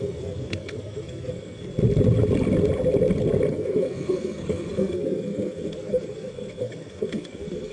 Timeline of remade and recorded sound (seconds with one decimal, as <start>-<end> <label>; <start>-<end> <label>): 0.0-1.7 remade; 1.7-3.5 recorded; 3.5-7.7 remade